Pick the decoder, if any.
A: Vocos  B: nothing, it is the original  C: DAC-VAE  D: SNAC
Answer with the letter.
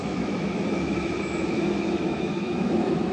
C